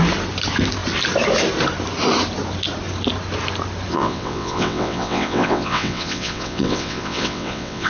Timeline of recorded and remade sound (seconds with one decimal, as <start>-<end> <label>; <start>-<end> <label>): 0.0-3.9 recorded; 3.9-7.9 remade

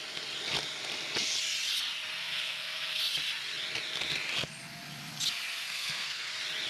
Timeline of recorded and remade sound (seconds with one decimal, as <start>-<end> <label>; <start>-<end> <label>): 0.0-2.2 recorded; 2.2-3.0 remade; 3.0-5.6 recorded; 5.6-6.3 remade; 6.3-6.7 recorded

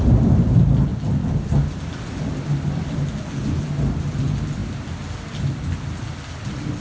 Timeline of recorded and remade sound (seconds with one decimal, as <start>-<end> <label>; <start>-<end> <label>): 0.0-6.8 recorded

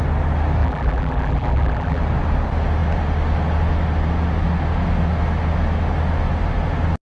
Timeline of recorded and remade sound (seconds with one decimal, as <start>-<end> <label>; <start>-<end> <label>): 0.0-0.6 recorded; 0.6-2.0 remade; 2.0-7.0 recorded

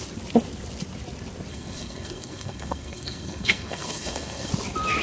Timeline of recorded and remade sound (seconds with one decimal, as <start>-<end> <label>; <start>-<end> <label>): 0.0-1.5 recorded; 1.5-4.5 remade; 4.5-5.0 recorded

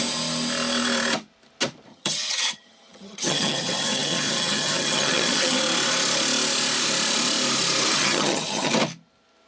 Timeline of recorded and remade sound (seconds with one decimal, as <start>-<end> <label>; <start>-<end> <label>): 0.0-1.9 recorded; 1.9-5.6 remade; 5.6-7.9 recorded; 7.9-8.7 remade; 8.7-9.5 recorded

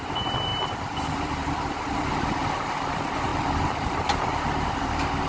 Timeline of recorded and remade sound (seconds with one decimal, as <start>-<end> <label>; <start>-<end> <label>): 0.0-5.3 recorded